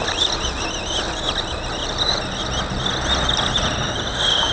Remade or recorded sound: recorded